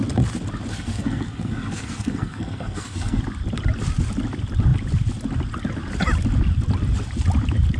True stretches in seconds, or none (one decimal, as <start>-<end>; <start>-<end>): 0.0-0.7; 3.2-7.8